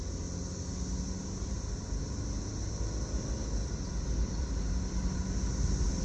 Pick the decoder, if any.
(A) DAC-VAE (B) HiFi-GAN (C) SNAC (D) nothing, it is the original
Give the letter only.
D